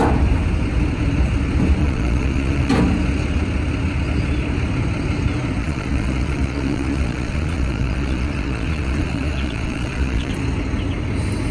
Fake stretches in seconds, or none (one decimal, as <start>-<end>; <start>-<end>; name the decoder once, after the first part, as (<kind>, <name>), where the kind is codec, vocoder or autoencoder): 1.8-2.7 (vocoder, Vocos); 5.6-10.3